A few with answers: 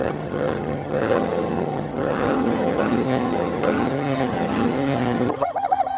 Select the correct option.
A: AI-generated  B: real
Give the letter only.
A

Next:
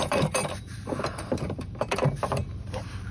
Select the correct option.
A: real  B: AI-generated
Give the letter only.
B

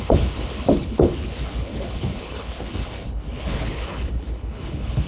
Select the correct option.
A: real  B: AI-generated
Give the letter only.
B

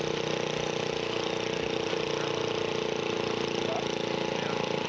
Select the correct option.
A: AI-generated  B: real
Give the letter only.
B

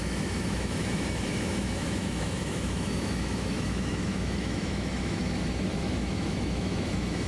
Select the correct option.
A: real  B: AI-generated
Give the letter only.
B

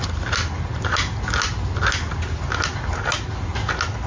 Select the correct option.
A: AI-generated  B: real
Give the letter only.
B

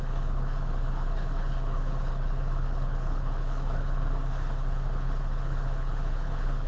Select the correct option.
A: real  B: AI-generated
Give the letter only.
B